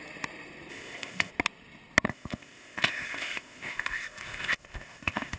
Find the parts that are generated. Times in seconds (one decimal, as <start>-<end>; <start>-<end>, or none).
0.7-1.3; 2.1-5.4